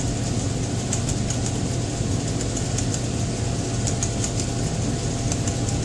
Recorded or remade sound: recorded